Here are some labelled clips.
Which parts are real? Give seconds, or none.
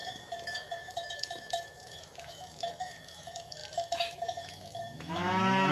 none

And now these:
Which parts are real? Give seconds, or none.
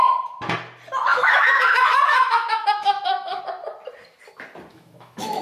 0.0-1.1; 3.4-4.7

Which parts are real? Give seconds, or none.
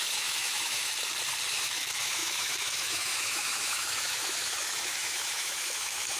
0.9-1.5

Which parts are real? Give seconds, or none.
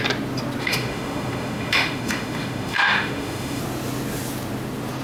0.0-0.6; 3.6-5.0